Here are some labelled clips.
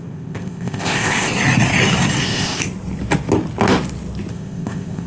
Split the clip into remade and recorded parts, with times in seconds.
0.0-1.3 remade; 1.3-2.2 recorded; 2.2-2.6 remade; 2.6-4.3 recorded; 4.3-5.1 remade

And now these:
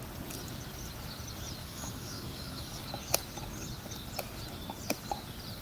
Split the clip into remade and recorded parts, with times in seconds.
0.0-1.6 recorded; 1.6-2.8 remade; 2.8-5.6 recorded

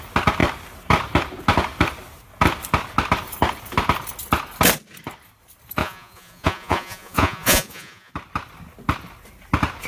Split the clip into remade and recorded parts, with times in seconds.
0.0-5.8 recorded; 5.8-8.1 remade; 8.1-9.9 recorded

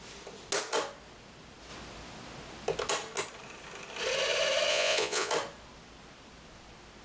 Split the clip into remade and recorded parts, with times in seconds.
0.0-4.7 recorded; 4.7-5.3 remade; 5.3-7.0 recorded

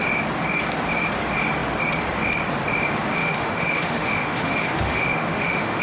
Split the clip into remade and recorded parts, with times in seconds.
0.0-3.2 recorded; 3.2-5.8 remade

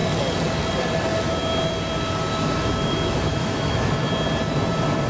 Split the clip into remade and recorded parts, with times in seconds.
0.0-2.3 recorded; 2.3-3.9 remade; 3.9-5.1 recorded